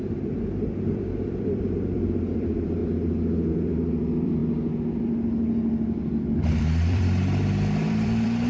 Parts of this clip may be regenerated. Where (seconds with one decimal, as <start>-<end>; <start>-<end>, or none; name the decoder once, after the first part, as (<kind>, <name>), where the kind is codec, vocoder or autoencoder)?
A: 0.0-2.8 (vocoder, BigVGAN v2); 3.5-4.4; 6.5-8.5